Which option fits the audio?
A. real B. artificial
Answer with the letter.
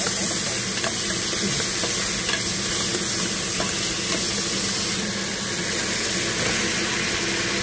A